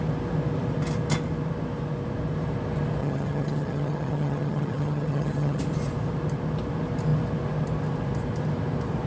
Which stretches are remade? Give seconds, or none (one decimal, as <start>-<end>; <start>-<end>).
3.0-5.6